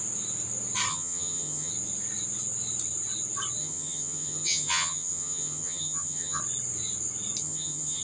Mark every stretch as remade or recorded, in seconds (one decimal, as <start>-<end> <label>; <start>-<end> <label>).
0.0-0.9 recorded; 0.9-1.7 remade; 1.7-3.6 recorded; 3.6-6.4 remade; 6.4-7.4 recorded; 7.4-8.0 remade